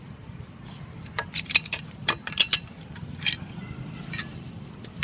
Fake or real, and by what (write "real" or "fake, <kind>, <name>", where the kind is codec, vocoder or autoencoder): real